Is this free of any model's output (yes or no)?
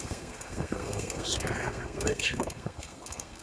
no